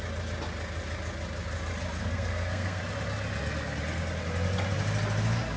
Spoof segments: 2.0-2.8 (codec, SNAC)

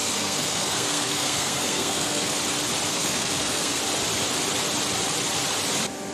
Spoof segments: 0.0-2.4 (codec, SNAC); 2.9-3.8

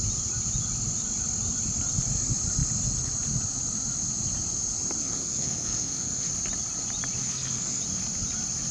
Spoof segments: 5.0-6.3 (codec, SNAC); 7.2-7.8

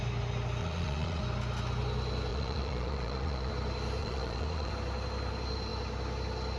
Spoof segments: 0.6-1.2 (vocoder, Vocos); 2.3-3.5; 4.0-4.7

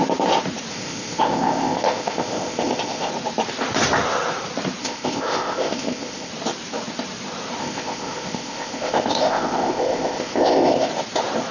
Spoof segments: 0.7-3.1 (codec, ZipCodec); 4.8-6.3; 7.6-10.9

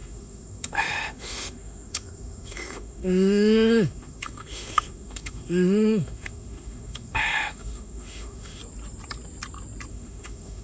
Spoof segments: 0.0-8.6 (autoencoder, DAC-VAE); 9.9-10.6

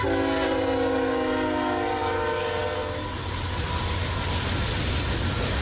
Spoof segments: none